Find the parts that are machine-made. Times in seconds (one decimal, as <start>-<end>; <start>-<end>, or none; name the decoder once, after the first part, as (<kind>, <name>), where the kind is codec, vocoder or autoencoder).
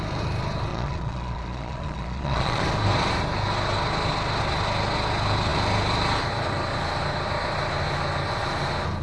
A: 0.7-2.6 (vocoder, Vocos)